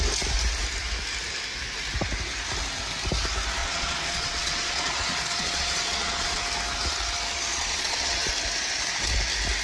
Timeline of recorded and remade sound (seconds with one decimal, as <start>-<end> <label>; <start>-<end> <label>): 0.0-3.6 recorded; 3.6-6.4 remade; 6.4-7.5 recorded; 7.5-8.3 remade; 8.3-9.6 recorded